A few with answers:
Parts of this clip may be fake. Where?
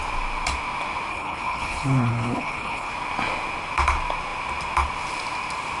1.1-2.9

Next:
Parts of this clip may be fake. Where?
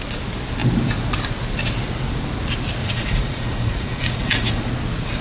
2.8-4.6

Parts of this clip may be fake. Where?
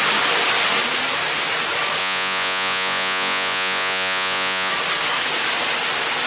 2.0-4.7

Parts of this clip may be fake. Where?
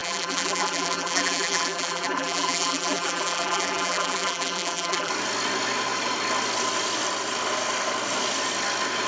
0.0-5.1